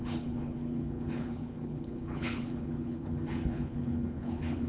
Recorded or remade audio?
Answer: remade